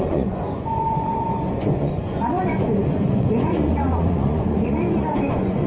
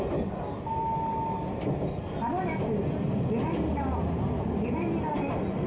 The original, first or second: second